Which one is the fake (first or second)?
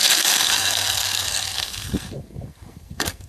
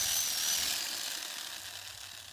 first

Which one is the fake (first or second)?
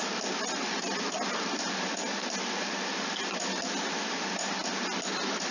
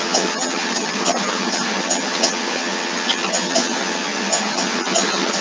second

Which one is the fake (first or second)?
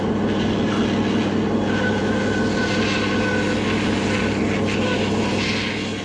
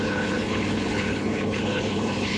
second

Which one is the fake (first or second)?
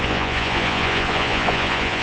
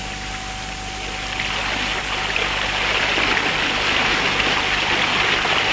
first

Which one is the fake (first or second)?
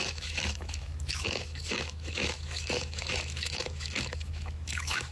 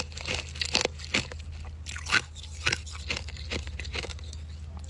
first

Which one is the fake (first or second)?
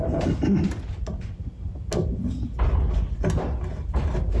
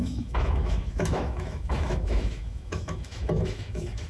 second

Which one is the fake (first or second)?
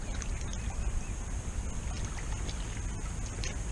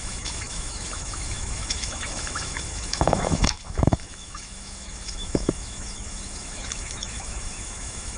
second